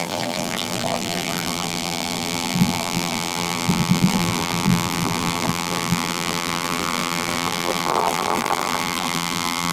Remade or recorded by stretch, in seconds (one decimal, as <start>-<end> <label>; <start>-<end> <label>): 0.0-9.7 remade